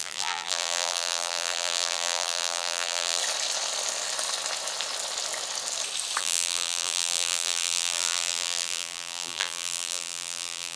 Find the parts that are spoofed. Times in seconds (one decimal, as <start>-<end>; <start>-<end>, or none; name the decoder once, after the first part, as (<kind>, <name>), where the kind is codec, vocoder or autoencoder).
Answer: 0.0-3.2 (vocoder, BigVGAN v2); 6.2-10.8